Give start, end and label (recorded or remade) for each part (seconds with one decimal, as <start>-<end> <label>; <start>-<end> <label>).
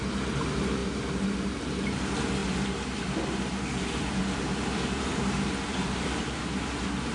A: 0.0-0.8 recorded; 0.8-1.6 remade; 1.6-4.2 recorded; 4.2-6.4 remade; 6.4-7.1 recorded